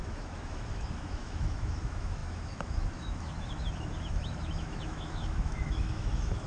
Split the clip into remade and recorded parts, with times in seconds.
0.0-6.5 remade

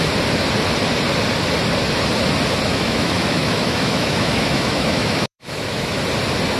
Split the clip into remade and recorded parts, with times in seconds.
0.0-2.7 recorded; 2.7-6.0 remade; 6.0-6.6 recorded

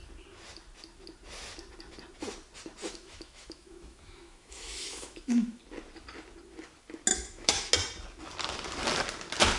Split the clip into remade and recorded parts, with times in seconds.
0.0-2.8 recorded; 2.8-5.6 remade; 5.6-7.1 recorded; 7.1-7.7 remade; 7.7-9.6 recorded

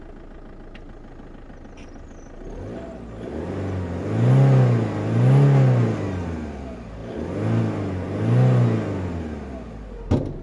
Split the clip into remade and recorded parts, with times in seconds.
0.0-10.4 recorded

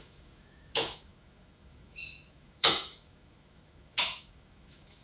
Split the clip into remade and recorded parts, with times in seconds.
0.0-5.0 remade

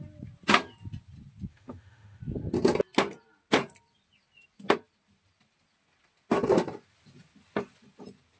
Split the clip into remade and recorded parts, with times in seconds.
0.0-1.5 recorded; 1.5-2.2 remade; 2.2-8.4 recorded

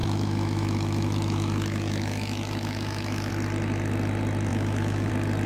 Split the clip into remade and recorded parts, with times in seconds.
0.0-3.3 remade; 3.3-4.5 recorded; 4.5-5.1 remade; 5.1-5.5 recorded